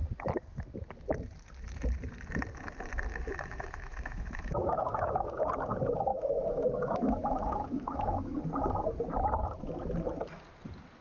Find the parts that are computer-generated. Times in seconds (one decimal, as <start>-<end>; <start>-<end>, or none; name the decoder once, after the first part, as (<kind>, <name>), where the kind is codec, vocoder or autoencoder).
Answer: 3.1-5.5 (autoencoder, DAC-VAE); 6.1-8.4